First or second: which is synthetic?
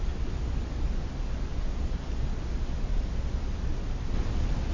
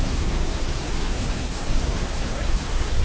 second